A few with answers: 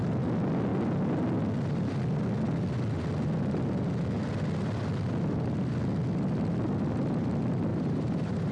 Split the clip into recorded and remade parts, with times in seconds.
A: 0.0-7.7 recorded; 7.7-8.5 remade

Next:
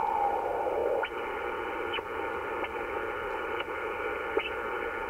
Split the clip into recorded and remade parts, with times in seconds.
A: 0.0-5.1 recorded

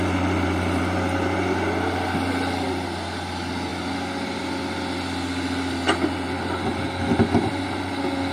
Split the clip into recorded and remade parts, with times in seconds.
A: 0.0-8.3 recorded